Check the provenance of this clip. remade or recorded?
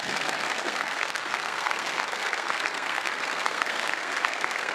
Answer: remade